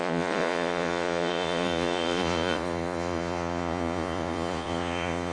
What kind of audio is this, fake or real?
fake